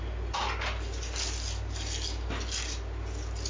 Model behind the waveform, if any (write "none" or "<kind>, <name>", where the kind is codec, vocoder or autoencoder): none